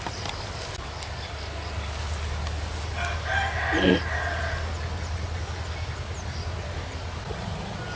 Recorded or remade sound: recorded